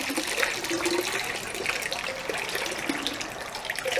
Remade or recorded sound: recorded